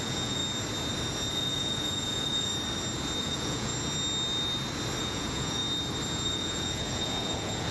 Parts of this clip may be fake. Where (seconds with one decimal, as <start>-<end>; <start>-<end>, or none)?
0.0-0.4; 1.3-2.5; 3.2-3.7; 5.0-5.6; 6.1-7.7